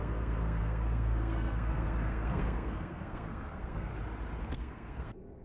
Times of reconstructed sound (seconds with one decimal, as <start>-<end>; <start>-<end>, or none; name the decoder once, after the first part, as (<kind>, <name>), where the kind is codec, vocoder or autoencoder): 0.0-3.9 (codec, SNAC); 4.4-5.4